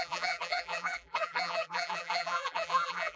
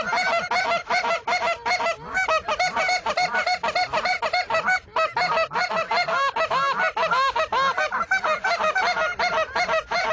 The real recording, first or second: second